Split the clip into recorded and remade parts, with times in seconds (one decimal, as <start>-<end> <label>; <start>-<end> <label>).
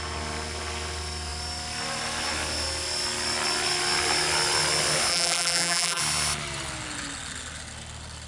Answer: 0.0-5.1 recorded; 5.1-6.0 remade; 6.0-8.3 recorded